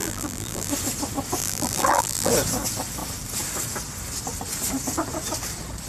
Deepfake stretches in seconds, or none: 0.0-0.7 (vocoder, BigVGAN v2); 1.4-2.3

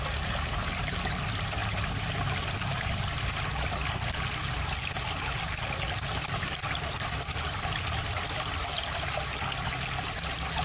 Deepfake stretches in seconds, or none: none

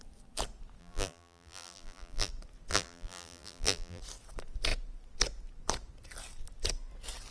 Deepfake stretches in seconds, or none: 0.8-2.3 (vocoder, BigVGAN v2); 2.7-4.0

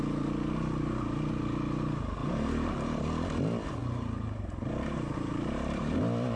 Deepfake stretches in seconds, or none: 2.2-2.7 (vocoder, BigVGAN v2); 3.8-6.0